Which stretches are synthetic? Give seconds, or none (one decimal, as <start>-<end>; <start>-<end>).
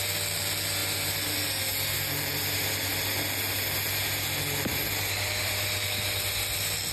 none